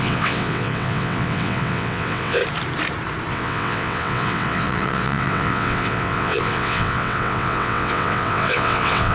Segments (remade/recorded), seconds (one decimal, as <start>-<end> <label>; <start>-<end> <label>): 0.0-2.4 remade; 2.4-3.3 recorded; 3.3-9.1 remade